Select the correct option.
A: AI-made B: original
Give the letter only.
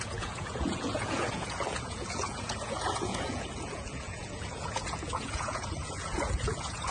A